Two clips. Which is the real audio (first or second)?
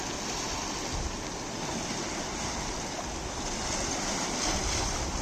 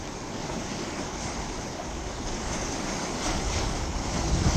first